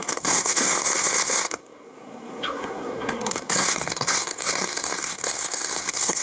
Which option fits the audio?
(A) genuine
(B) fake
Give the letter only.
B